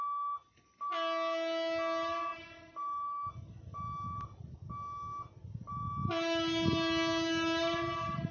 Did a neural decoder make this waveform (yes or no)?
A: no